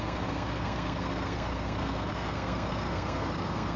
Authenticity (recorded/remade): remade